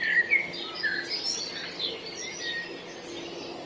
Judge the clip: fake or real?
real